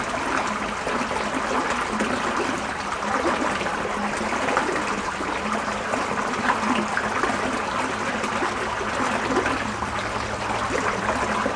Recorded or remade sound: recorded